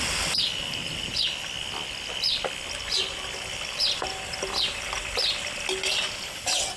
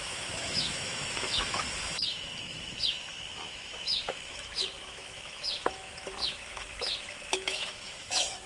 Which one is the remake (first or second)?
second